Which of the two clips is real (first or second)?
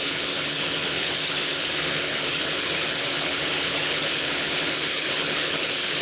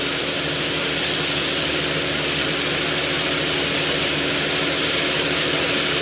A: second